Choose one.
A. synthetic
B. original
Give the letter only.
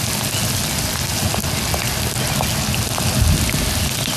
B